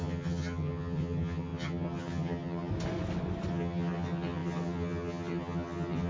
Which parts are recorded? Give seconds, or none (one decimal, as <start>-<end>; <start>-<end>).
2.7-3.5